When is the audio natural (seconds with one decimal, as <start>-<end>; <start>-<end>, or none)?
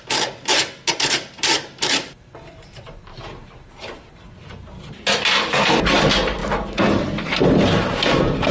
none